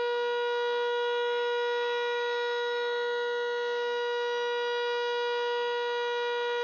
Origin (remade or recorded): remade